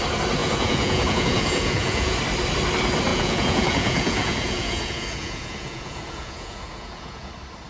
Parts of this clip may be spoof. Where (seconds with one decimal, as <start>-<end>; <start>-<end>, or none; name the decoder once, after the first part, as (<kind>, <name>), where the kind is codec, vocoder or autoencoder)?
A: 0.4-2.2 (vocoder, Vocos); 3.1-7.3